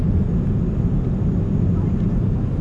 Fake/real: fake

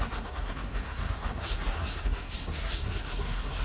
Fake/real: fake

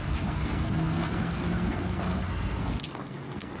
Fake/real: fake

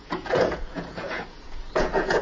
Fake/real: fake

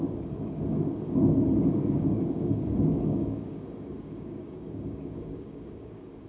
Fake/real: fake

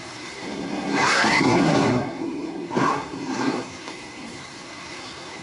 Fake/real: fake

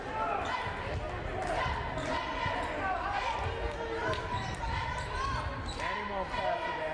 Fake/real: real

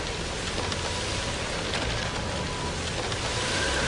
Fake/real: real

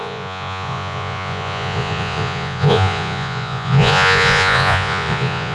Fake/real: fake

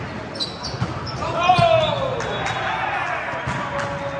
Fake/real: real